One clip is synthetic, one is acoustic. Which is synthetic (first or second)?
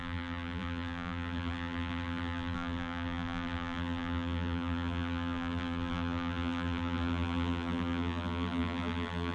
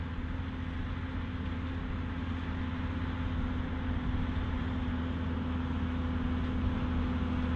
first